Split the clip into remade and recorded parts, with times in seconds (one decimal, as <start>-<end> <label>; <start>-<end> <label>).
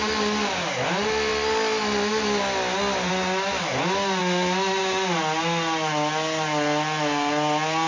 0.0-7.9 recorded